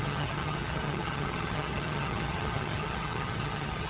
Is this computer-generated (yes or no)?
yes